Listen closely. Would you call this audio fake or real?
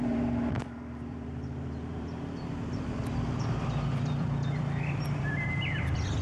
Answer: fake